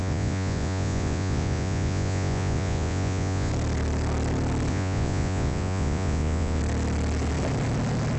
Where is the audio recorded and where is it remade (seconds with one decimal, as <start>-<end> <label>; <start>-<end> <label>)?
0.0-3.5 remade; 3.5-4.7 recorded; 4.7-6.6 remade; 6.6-8.2 recorded